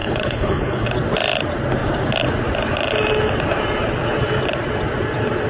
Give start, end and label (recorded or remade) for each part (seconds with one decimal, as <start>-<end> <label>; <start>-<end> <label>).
0.0-0.9 remade; 0.9-5.5 recorded